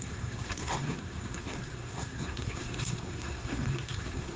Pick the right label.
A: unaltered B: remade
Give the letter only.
B